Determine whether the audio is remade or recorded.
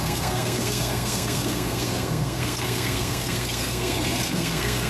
remade